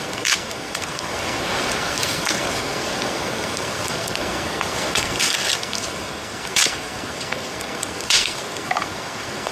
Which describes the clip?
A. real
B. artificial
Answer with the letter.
B